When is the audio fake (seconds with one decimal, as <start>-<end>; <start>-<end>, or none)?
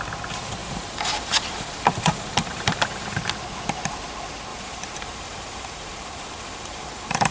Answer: 0.6-3.2; 4.5-7.3